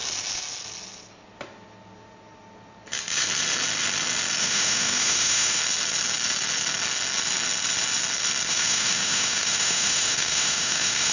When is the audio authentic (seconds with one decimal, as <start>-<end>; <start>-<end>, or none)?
0.0-4.4; 5.6-8.5